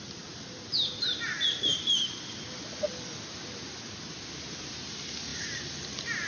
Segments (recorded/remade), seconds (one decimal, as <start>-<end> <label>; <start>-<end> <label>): 0.0-6.3 recorded